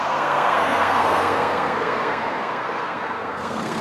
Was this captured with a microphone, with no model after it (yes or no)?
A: no